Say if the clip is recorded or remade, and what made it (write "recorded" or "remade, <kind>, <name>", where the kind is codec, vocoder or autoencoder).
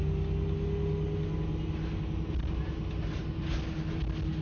recorded